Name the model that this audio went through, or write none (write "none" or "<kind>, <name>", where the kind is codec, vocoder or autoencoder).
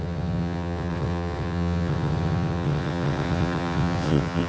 vocoder, WaveNeXt